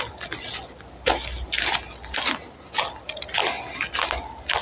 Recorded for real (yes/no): yes